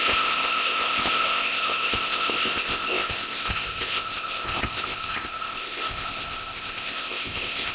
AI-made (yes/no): yes